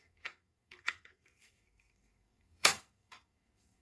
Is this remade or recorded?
remade